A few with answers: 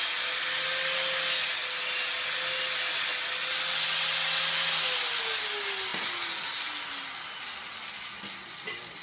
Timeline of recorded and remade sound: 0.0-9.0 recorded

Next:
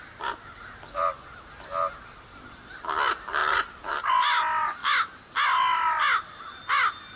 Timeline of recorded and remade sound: 0.0-7.2 recorded

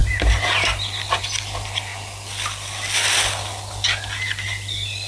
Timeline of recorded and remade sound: 0.0-5.1 recorded

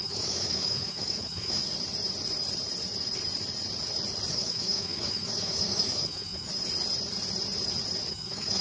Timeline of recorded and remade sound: 0.0-1.6 remade; 1.6-4.3 recorded; 4.3-6.5 remade; 6.5-8.1 recorded; 8.1-8.6 remade

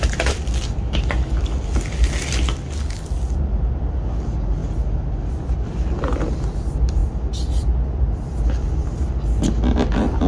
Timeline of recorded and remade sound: 0.0-10.3 recorded

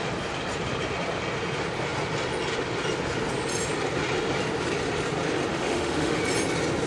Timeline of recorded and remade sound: 0.0-5.5 recorded; 5.5-6.2 remade; 6.2-6.9 recorded

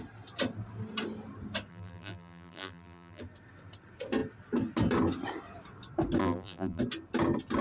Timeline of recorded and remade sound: 0.0-1.7 recorded; 1.7-3.2 remade; 3.2-6.2 recorded; 6.2-6.8 remade; 6.8-7.6 recorded